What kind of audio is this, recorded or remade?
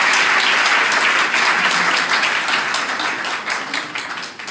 recorded